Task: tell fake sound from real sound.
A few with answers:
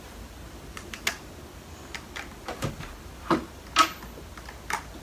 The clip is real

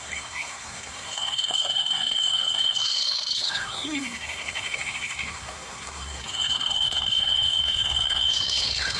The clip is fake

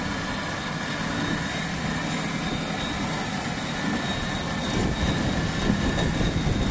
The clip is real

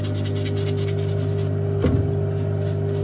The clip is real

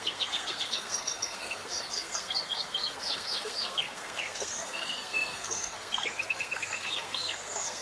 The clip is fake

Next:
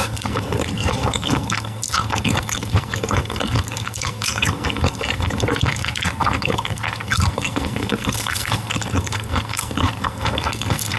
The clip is fake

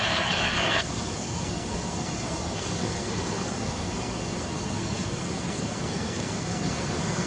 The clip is fake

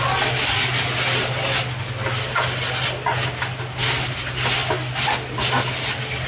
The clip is real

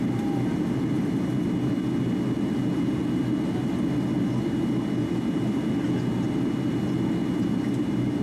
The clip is real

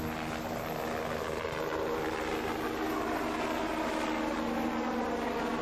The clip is real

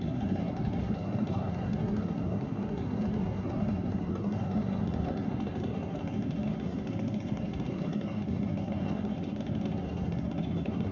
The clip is fake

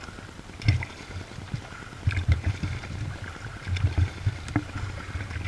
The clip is real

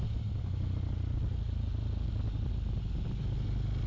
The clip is real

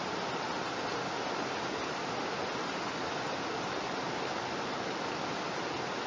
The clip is real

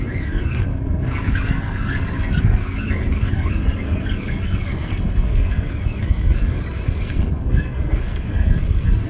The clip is fake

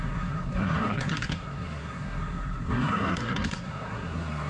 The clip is fake